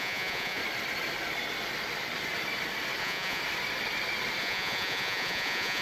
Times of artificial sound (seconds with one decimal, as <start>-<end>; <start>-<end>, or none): 0.0-0.6; 3.0-3.4; 4.4-5.8